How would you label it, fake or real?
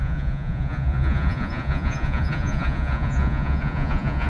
fake